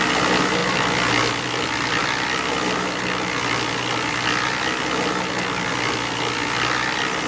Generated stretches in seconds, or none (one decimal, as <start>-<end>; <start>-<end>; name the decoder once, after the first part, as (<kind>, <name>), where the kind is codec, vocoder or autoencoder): none